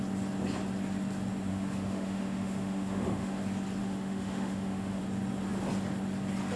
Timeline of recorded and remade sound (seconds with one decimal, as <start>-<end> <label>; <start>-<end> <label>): 0.0-1.5 recorded; 1.5-3.4 remade; 3.4-3.8 recorded; 3.8-5.0 remade; 5.0-6.6 recorded